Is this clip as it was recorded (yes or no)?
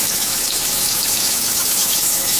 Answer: no